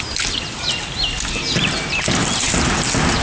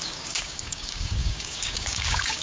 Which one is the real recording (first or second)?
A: first